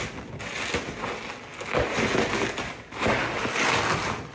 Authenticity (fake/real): real